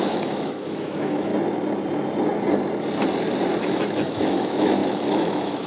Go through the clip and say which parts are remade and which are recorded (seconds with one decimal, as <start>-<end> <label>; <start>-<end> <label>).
0.0-1.3 remade; 1.3-3.6 recorded; 3.6-5.7 remade